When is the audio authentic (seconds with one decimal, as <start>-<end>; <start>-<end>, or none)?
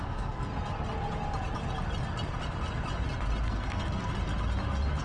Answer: 0.5-3.5; 4.1-5.0